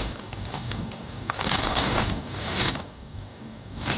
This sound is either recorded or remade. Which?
remade